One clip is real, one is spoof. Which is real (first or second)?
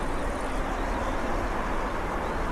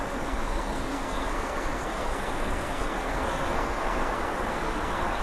first